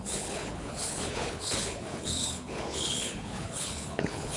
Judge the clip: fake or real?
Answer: fake